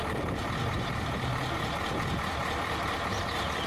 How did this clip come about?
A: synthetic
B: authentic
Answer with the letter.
A